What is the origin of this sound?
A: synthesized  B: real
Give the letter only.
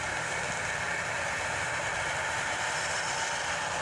B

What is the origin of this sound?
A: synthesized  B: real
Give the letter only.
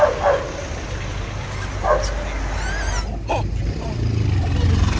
B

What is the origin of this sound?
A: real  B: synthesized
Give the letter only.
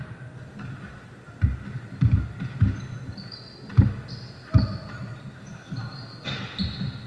A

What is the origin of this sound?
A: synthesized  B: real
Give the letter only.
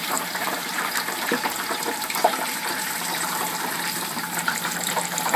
A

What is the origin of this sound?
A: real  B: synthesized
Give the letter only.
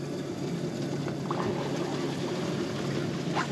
A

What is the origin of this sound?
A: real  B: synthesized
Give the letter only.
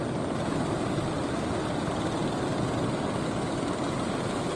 A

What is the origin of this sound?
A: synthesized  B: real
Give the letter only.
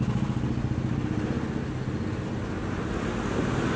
B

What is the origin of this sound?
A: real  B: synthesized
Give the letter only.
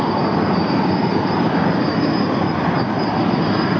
B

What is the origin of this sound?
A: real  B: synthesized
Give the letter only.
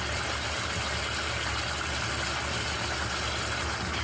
A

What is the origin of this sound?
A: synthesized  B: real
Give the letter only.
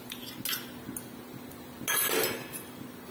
B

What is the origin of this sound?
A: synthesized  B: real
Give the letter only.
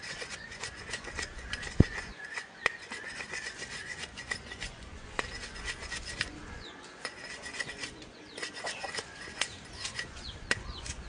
A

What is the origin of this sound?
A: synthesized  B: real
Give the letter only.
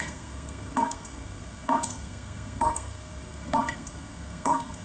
A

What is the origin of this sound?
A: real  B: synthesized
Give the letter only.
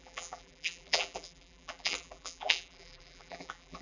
B